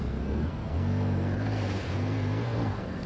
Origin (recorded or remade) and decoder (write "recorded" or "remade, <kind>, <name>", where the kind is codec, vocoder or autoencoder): remade, codec, SNAC